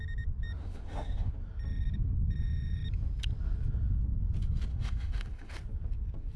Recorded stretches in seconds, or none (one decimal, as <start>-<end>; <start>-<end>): 0.0-0.6; 1.3-4.7; 5.5-6.4